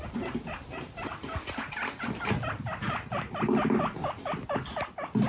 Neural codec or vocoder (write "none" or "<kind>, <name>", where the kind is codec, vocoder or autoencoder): none